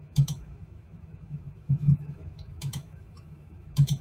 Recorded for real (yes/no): no